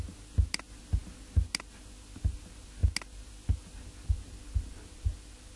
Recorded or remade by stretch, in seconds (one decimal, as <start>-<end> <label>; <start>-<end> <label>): 0.0-5.6 recorded